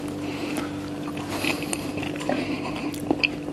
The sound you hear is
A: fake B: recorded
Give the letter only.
B